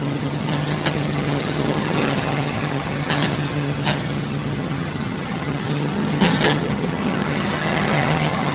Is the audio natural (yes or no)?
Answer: no